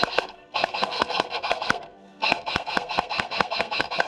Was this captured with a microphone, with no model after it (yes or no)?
no